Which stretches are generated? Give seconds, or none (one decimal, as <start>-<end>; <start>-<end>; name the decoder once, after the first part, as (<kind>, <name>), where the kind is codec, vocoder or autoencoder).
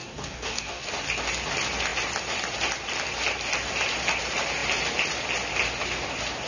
0.0-0.9 (codec, DAC)